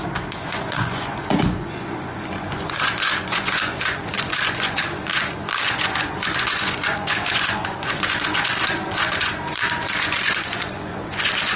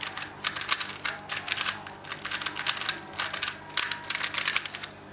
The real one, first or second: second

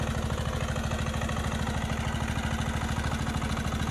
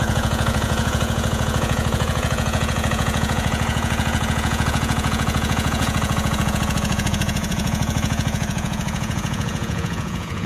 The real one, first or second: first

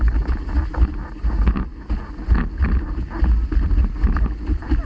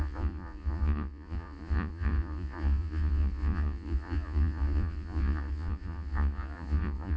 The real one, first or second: first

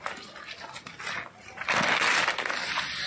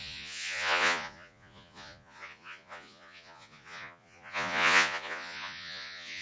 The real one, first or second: first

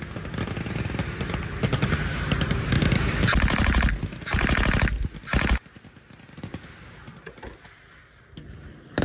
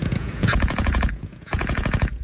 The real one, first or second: first